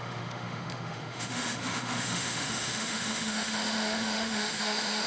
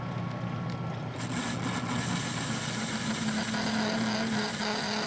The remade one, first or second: first